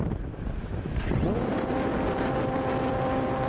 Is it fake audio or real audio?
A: real